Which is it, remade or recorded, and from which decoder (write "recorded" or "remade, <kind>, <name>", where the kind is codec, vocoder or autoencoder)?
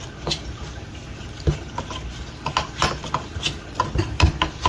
recorded